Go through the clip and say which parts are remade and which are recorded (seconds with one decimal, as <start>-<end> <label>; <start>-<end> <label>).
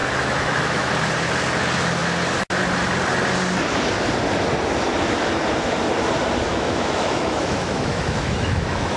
0.0-0.9 remade; 0.9-6.5 recorded; 6.5-9.0 remade